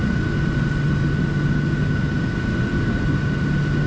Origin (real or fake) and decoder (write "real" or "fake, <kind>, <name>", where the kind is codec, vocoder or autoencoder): real